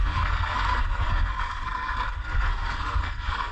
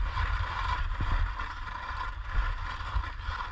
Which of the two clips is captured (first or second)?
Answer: second